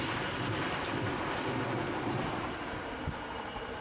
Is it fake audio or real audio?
real